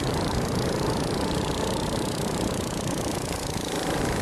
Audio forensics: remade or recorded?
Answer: remade